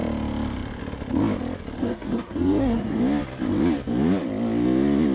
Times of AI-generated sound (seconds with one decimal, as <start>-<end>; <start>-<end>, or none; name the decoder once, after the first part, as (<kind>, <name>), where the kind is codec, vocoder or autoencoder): 1.8-3.0 (codec, SNAC)